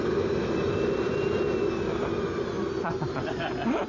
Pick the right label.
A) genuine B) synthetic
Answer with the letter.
A